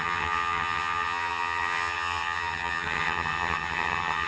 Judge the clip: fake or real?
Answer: fake